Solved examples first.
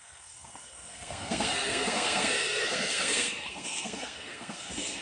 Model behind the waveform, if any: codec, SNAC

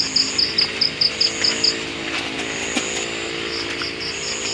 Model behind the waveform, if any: none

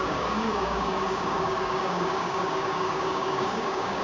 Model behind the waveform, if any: codec, DAC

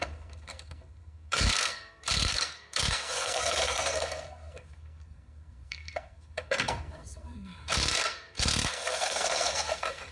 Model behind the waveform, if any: codec, SNAC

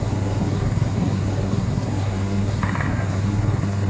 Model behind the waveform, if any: codec, SNAC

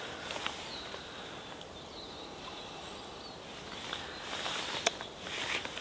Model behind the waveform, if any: none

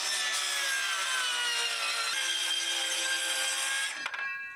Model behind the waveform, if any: none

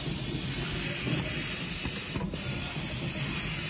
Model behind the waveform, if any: none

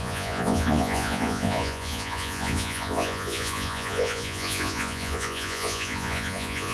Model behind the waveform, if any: vocoder, Vocos